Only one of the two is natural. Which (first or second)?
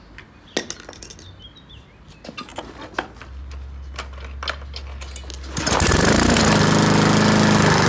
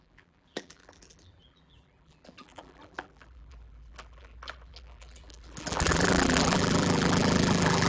first